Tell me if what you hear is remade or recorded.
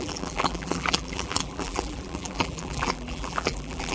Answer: remade